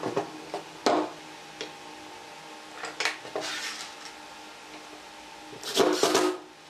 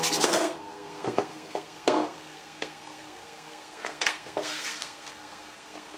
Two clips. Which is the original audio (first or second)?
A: first